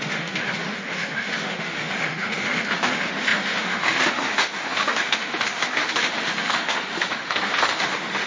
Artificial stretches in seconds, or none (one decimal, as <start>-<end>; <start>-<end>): 0.0-8.3